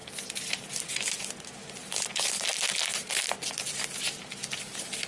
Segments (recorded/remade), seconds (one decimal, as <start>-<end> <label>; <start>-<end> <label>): 0.0-5.1 recorded